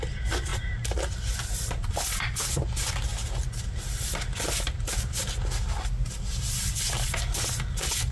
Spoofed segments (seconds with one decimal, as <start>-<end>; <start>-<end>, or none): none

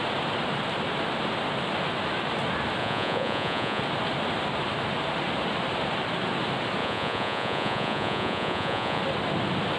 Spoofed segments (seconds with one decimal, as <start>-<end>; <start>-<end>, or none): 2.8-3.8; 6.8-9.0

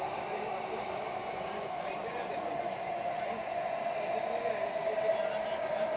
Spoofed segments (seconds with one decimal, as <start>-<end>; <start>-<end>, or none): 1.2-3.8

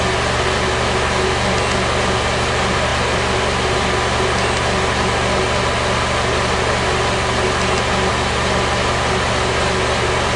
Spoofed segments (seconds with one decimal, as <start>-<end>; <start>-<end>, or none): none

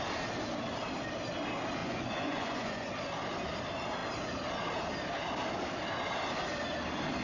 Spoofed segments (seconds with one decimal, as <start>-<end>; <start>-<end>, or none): 1.8-2.9

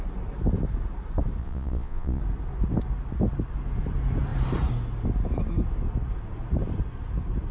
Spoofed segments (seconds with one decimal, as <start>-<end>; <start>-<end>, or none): 1.4-2.2

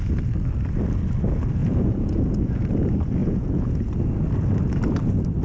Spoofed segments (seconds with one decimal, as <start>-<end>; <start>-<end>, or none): 1.6-2.7; 3.2-3.8

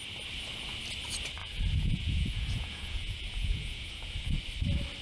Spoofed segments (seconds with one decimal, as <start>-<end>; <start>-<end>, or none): 1.4-4.4